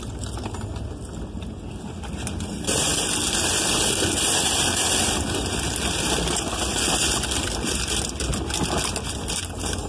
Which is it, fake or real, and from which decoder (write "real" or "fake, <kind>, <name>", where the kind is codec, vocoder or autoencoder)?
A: real